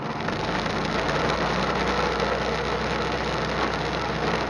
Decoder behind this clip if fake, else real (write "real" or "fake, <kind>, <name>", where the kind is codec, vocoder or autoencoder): real